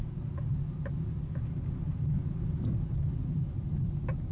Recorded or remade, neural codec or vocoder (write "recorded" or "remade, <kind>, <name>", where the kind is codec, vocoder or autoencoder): recorded